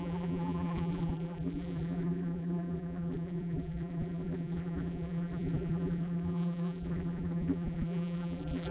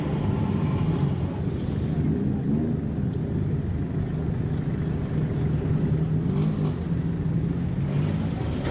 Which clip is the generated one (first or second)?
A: first